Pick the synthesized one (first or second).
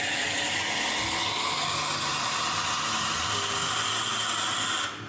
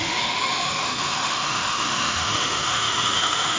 second